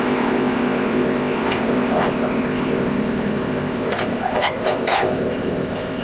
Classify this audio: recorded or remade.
remade